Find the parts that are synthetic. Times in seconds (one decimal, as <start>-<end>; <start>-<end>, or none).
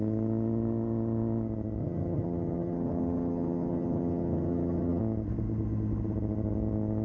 1.8-5.0